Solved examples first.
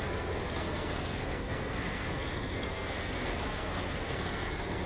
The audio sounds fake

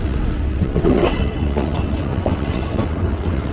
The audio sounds fake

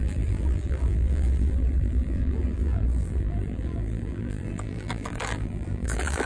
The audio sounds fake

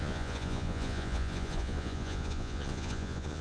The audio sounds fake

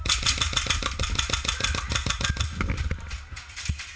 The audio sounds real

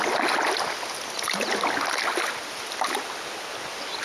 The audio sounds real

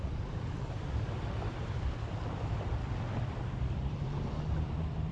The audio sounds fake